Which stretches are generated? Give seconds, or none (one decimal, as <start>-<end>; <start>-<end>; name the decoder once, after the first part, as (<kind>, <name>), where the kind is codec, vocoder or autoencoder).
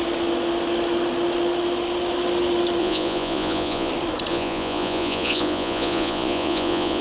2.8-3.9 (vocoder, Vocos); 4.3-7.0